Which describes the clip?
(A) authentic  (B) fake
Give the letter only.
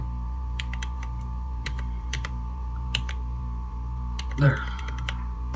B